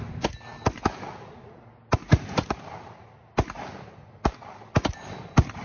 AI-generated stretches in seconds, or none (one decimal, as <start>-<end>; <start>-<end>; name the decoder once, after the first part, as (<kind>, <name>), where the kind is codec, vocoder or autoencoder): none